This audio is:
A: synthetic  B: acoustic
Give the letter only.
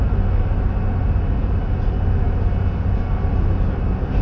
B